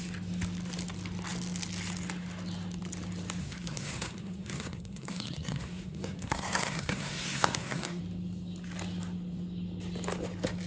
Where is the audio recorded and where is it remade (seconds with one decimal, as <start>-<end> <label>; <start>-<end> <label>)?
0.0-3.4 recorded; 3.4-8.0 remade; 8.0-10.7 recorded